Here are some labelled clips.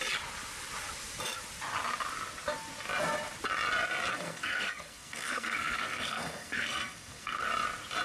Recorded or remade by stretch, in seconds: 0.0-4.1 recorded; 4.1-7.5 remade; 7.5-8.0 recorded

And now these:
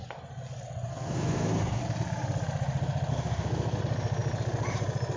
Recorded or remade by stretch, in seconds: 0.0-0.9 recorded; 0.9-1.8 remade; 1.8-3.1 recorded; 3.1-3.8 remade; 3.8-5.2 recorded

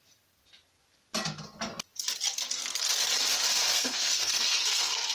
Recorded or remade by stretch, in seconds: 0.0-3.7 recorded; 3.7-5.1 remade

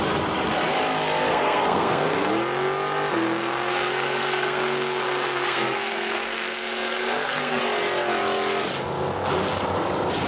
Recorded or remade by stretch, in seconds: 0.0-1.3 recorded; 1.3-2.3 remade; 2.3-3.1 recorded; 3.1-7.6 remade; 7.6-10.3 recorded